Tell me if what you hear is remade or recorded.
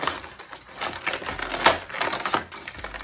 recorded